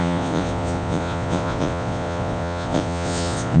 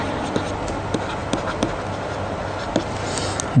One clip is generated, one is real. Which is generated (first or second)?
first